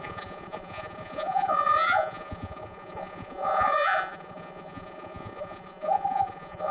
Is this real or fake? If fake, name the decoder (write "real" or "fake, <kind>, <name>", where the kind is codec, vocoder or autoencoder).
fake, vocoder, Vocos